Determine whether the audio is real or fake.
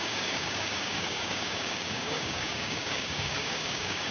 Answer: fake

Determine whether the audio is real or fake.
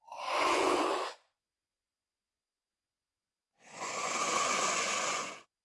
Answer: fake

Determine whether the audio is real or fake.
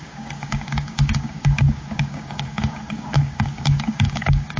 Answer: fake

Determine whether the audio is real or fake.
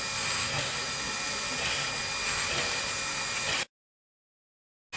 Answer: real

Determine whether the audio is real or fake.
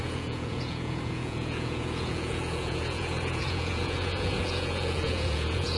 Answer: fake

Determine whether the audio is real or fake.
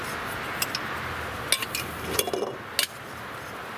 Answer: real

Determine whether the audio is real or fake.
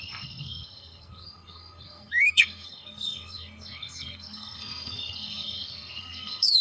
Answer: fake